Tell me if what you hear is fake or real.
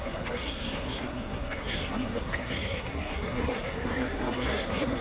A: fake